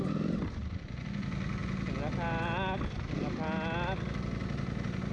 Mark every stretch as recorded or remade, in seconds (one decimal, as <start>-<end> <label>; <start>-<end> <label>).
0.0-5.1 recorded